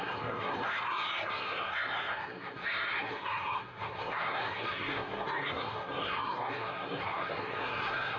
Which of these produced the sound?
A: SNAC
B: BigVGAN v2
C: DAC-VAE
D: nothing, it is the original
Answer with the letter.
A